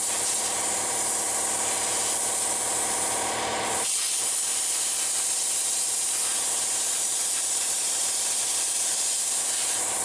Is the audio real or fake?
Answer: real